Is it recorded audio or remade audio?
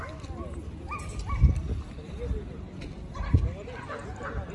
recorded